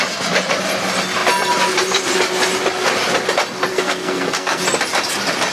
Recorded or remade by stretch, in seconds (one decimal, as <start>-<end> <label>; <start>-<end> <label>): 0.0-3.7 recorded; 3.7-4.6 remade; 4.6-5.5 recorded